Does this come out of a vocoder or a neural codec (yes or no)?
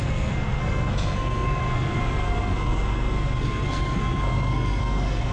yes